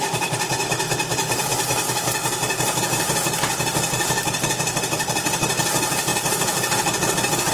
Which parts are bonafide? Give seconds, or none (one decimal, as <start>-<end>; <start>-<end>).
1.5-2.8; 6.1-7.5

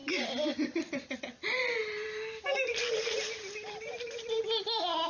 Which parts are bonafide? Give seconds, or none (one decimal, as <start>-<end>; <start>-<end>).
0.0-1.8; 4.4-5.1